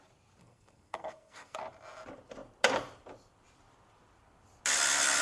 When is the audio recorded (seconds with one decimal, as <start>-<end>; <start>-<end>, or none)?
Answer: 0.0-0.4; 1.6-5.2